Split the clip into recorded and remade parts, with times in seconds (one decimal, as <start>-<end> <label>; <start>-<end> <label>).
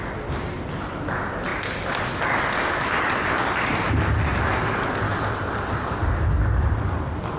0.0-7.4 recorded